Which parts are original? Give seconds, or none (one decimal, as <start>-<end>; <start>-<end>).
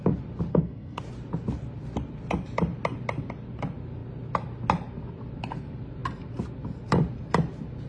0.0-0.5; 1.0-7.9